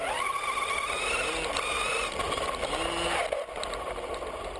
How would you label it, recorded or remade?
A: recorded